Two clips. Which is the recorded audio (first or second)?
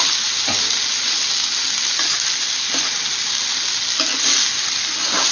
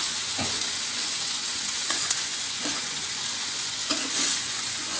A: first